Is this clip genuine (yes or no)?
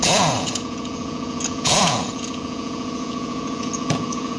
no